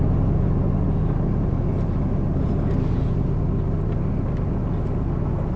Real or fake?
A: real